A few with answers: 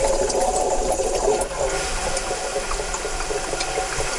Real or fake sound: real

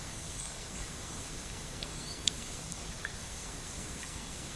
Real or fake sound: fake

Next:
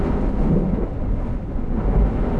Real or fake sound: real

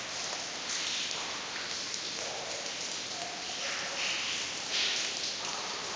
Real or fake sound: real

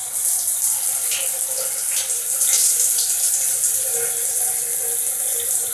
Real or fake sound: real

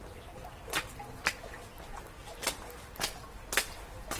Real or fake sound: real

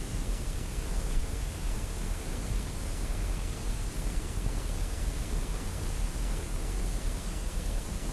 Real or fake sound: fake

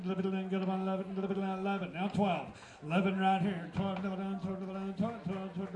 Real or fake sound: real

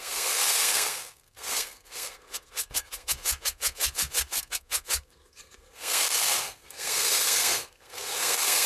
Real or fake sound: fake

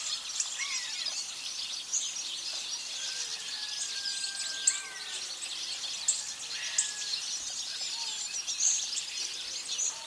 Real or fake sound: real